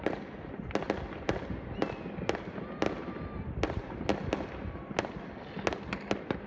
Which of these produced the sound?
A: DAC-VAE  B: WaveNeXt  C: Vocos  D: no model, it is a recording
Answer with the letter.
D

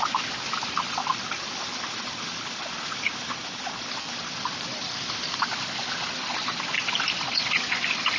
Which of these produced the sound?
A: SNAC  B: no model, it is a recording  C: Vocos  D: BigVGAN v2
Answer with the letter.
B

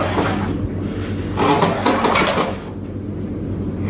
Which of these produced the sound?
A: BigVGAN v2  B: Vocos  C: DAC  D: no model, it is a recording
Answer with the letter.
D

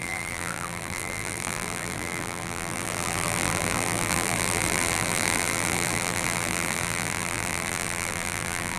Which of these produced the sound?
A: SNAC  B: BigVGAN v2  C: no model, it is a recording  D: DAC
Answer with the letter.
B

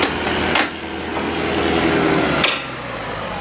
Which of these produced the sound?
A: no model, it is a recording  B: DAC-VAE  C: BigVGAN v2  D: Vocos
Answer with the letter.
A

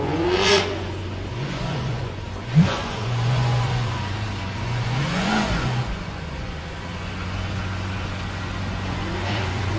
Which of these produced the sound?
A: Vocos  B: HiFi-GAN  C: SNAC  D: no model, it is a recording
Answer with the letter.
A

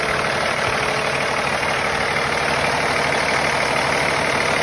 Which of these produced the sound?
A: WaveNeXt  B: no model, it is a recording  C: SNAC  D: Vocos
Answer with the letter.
B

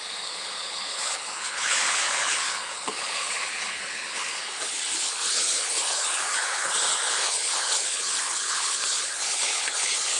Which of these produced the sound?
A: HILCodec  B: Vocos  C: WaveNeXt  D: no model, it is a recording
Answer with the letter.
A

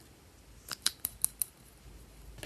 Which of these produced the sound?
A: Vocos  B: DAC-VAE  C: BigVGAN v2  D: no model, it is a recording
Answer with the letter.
D